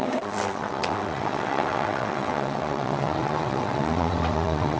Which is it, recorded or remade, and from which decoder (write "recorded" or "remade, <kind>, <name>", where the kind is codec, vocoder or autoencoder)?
remade, vocoder, WaveNeXt